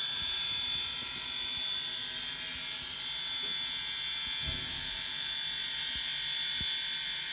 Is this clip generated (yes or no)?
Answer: no